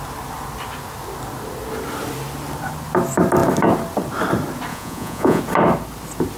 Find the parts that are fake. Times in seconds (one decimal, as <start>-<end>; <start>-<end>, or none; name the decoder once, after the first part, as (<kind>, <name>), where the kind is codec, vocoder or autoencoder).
4.7-5.4 (vocoder, Vocos)